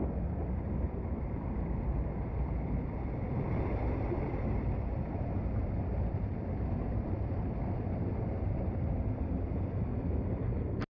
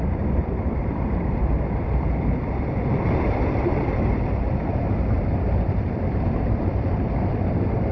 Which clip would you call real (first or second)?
first